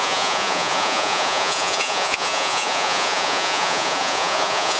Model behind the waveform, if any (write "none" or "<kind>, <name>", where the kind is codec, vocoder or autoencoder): vocoder, Vocos